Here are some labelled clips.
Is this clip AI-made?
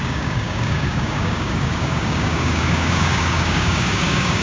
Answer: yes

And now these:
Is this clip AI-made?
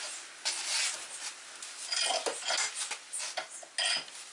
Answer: no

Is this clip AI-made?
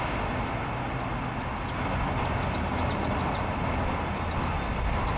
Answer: no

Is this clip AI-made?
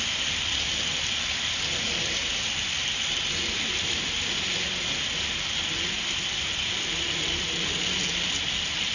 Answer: no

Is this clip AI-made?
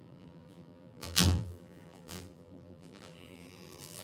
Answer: yes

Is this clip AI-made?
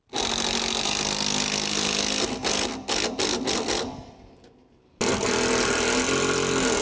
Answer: no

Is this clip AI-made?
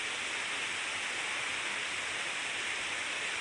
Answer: no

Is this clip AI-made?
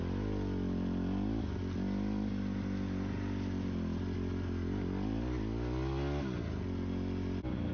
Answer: no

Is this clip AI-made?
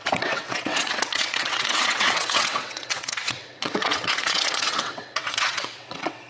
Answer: yes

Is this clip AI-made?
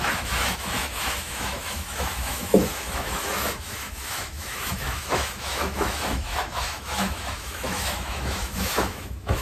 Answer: yes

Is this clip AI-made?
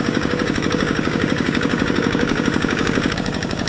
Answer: yes